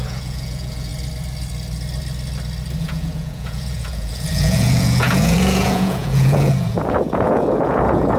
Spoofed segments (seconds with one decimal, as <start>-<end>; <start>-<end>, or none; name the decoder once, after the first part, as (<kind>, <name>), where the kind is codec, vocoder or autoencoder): 0.0-0.9 (vocoder, Vocos); 2.8-8.2